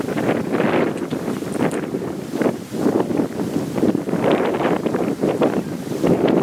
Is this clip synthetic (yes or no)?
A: yes